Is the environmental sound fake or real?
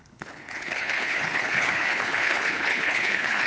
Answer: fake